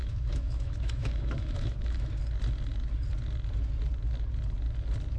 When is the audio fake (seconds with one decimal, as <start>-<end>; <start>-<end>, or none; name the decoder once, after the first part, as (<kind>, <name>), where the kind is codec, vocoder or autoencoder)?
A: 0.0-2.1 (autoencoder, DAC-VAE)